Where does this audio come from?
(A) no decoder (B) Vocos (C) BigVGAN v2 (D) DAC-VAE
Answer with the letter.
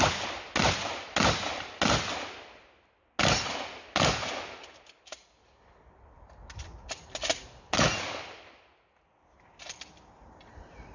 A